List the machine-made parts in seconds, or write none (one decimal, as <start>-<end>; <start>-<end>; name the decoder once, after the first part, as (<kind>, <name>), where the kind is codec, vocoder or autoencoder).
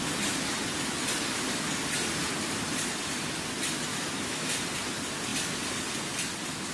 3.9-4.5 (autoencoder, DAC-VAE)